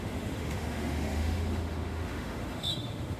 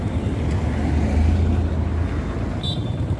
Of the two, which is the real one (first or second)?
second